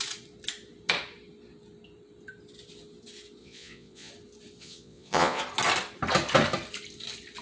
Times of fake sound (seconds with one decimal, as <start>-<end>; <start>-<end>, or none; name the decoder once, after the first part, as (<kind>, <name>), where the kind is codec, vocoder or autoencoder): 3.4-4.1 (vocoder, Vocos); 4.6-5.4